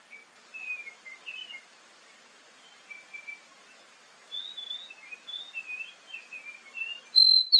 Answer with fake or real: real